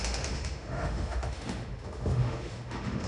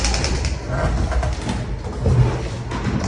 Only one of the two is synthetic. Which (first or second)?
first